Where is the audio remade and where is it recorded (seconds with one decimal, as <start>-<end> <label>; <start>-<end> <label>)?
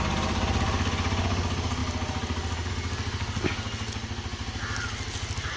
0.0-5.6 recorded